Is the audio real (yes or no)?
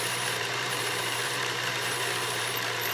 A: no